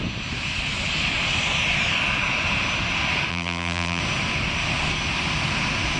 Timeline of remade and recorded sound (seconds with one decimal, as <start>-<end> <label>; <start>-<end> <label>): 0.0-3.3 recorded; 3.3-4.0 remade; 4.0-6.0 recorded